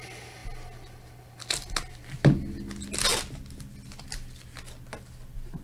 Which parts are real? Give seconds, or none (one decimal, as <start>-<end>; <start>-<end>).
0.0-5.6